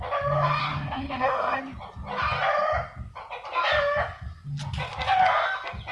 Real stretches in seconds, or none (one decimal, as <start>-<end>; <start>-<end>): 0.0-0.6; 1.6-5.9